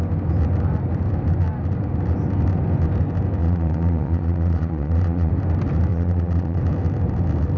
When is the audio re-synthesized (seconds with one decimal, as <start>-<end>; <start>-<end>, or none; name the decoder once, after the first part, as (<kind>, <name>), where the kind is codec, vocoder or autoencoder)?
3.4-5.3 (vocoder, Vocos); 5.9-6.6